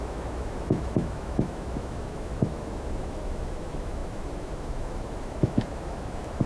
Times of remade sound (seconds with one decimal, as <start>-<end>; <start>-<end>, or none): 0.0-6.5

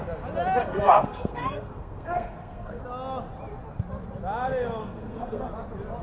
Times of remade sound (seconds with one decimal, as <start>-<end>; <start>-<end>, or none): 0.6-2.8; 4.8-5.4

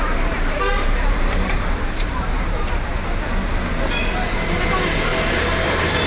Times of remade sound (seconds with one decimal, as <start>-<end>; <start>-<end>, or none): 0.0-2.9; 5.1-6.1

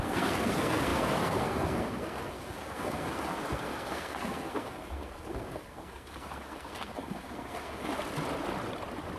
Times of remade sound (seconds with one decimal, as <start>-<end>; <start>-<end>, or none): 0.0-7.9